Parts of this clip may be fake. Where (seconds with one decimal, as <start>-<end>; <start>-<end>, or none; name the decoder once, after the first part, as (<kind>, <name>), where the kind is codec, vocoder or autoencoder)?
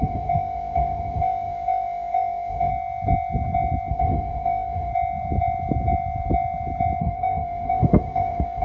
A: 0.0-2.7 (autoencoder, DAC-VAE); 3.9-4.9; 7.0-8.6